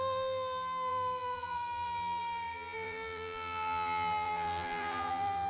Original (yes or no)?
no